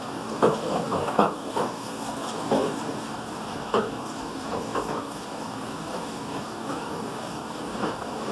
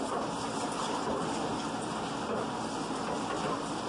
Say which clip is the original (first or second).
second